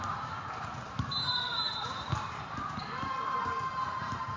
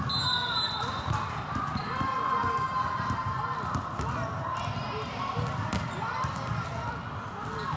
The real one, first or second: second